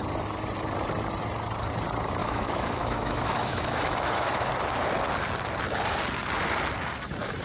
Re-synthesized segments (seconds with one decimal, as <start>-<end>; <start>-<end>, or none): 2.2-4.5

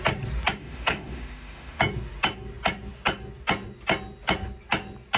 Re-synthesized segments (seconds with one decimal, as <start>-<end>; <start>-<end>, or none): 0.6-1.8